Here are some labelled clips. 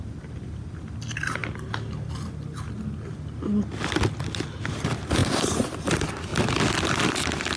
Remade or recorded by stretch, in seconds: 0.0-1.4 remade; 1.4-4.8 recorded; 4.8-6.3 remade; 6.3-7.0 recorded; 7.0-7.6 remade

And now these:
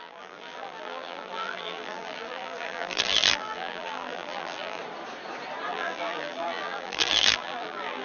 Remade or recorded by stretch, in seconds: 0.0-4.8 remade; 4.8-5.7 recorded; 5.7-8.0 remade

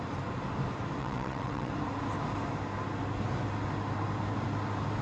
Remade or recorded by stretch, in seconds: 0.0-1.0 recorded; 1.0-1.7 remade; 1.7-5.0 recorded